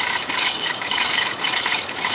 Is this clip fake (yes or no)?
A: yes